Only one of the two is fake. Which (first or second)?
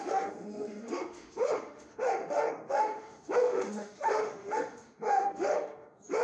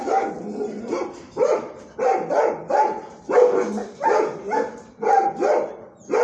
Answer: first